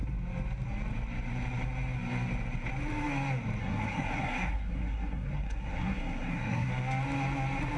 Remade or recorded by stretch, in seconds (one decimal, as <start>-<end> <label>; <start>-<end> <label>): 0.0-3.6 recorded; 3.6-6.7 remade; 6.7-7.8 recorded